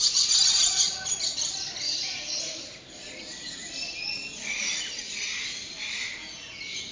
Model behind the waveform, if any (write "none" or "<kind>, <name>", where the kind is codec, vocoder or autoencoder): none